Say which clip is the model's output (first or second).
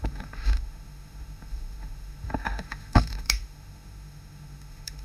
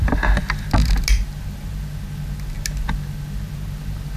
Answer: first